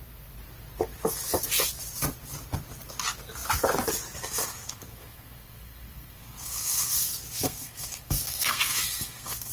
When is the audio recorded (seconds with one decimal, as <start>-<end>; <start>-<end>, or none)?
0.0-4.6